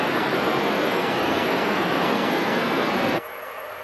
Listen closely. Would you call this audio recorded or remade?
remade